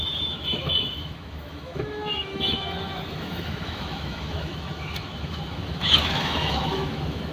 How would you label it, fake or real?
fake